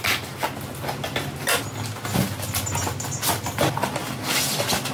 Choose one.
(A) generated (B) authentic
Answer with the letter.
B